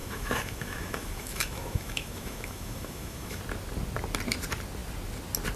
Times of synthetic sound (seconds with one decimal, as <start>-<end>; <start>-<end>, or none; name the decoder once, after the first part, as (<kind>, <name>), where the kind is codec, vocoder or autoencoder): 0.0-3.4 (autoencoder, DAC-VAE)